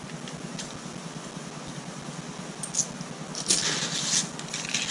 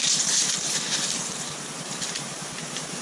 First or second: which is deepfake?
second